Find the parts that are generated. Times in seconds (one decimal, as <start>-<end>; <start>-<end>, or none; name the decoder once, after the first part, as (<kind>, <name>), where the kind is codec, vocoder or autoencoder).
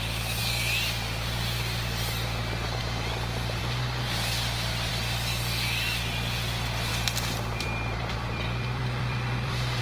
6.9-9.8 (vocoder, BigVGAN v2)